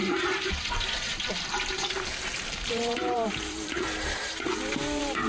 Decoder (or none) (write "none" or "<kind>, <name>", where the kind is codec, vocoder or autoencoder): vocoder, BigVGAN v2